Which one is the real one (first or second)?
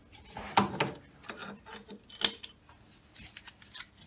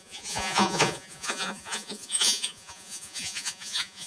first